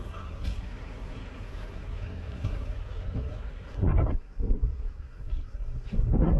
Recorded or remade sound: remade